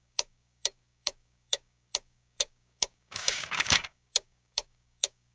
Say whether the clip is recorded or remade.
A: remade